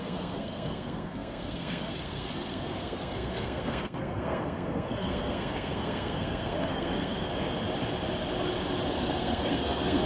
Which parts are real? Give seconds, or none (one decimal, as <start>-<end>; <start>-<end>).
7.3-8.9